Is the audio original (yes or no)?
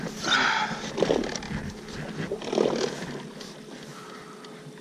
yes